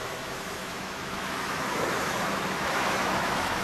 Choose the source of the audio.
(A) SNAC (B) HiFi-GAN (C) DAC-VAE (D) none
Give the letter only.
C